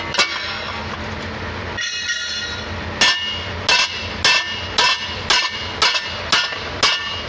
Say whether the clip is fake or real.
real